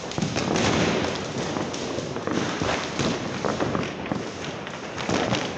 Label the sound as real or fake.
real